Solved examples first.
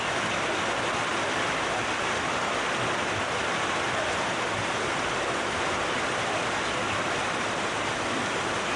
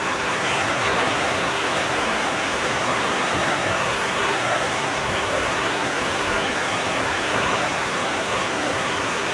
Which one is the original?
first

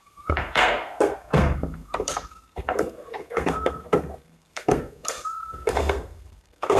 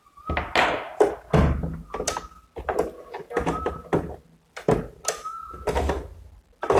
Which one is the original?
second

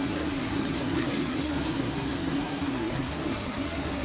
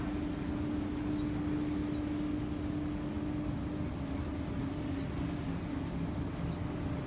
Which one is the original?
second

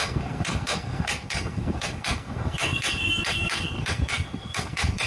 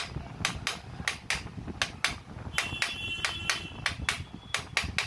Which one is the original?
second